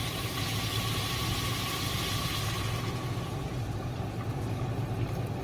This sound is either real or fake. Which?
real